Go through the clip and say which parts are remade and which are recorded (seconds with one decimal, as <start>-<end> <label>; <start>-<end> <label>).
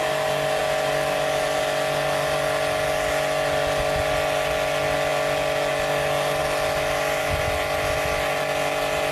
0.0-9.1 recorded